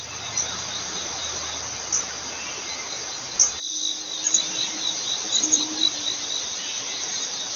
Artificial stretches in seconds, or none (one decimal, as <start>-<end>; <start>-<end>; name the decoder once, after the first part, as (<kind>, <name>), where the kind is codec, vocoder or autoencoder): 1.2-2.0 (vocoder, BigVGAN v2); 3.6-6.6